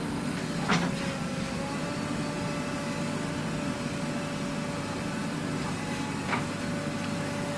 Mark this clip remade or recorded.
recorded